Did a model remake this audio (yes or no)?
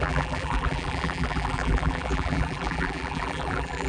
yes